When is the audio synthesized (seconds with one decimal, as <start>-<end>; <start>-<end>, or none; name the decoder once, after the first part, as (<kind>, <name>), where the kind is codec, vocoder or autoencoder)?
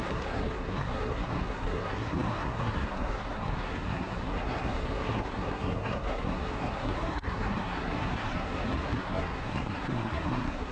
0.0-10.7 (codec, SNAC)